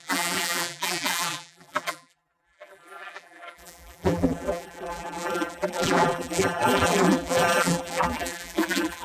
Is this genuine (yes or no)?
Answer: no